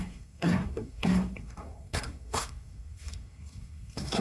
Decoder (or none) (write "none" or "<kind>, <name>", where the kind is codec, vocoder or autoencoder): codec, SNAC